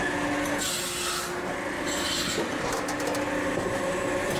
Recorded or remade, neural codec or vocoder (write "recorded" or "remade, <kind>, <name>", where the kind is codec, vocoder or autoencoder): recorded